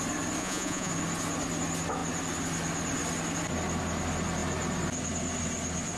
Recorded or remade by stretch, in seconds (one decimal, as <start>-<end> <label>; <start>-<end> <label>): 0.0-0.4 recorded; 0.4-0.9 remade; 0.9-6.0 recorded